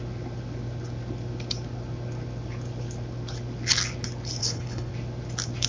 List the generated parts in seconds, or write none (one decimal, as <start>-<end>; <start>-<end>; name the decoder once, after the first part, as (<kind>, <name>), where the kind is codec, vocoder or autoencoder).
4.4-4.9 (codec, HILCodec)